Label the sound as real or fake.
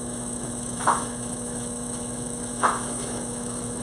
fake